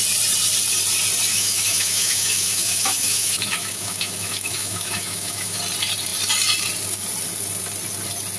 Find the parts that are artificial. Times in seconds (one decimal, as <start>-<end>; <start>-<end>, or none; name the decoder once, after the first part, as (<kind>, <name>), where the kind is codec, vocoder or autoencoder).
1.3-5.6 (autoencoder, DAC-VAE)